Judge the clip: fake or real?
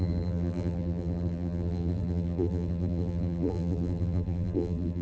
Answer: fake